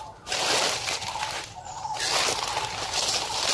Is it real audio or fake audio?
real